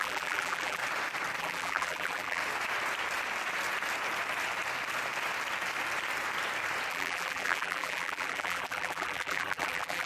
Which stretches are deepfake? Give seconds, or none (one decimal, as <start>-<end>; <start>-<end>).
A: 0.0-0.8; 1.4-2.4; 6.9-10.1